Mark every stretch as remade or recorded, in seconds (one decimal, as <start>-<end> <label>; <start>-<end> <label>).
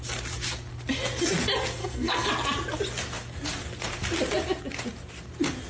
0.0-1.8 recorded; 1.8-2.3 remade; 2.3-5.7 recorded